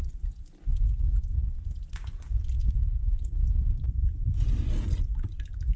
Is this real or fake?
real